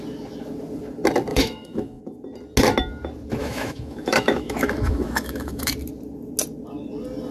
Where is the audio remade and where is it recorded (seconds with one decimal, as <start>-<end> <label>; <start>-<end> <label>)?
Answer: 0.0-1.3 recorded; 1.3-2.0 remade; 2.0-3.4 recorded; 3.4-5.7 remade; 5.7-7.3 recorded